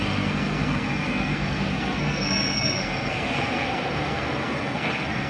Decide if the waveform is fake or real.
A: fake